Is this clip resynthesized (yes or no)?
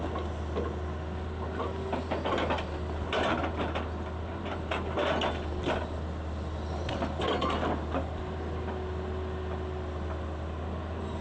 no